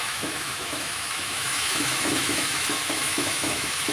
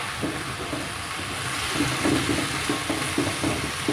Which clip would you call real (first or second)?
second